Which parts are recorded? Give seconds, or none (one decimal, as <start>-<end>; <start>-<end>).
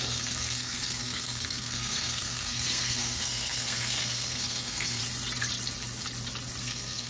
5.0-6.6